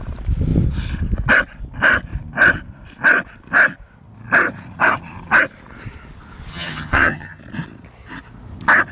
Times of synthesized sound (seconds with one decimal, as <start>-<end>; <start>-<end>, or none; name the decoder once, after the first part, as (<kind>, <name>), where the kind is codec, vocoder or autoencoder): 6.5-7.4 (vocoder, HiFi-GAN)